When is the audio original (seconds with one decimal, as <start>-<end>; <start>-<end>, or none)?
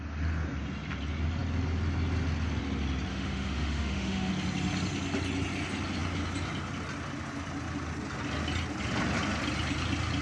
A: 0.0-3.1; 4.3-10.2